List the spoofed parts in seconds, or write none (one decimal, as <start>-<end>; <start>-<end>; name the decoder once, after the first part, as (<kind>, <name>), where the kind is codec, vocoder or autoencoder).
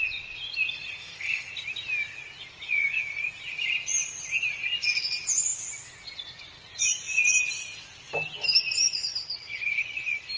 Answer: 1.0-1.5 (codec, SNAC)